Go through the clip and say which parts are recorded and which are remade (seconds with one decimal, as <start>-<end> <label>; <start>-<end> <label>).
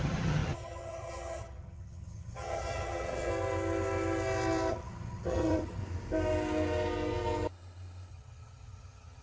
0.0-3.3 remade; 3.3-4.7 recorded; 4.7-5.8 remade; 5.8-8.1 recorded; 8.1-9.2 remade